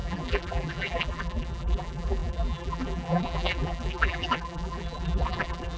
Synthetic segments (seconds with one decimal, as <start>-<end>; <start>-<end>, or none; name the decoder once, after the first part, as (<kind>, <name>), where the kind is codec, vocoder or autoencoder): 0.0-5.8 (vocoder, BigVGAN v2)